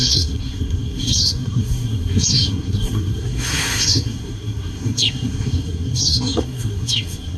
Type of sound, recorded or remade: remade